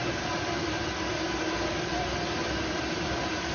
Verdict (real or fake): real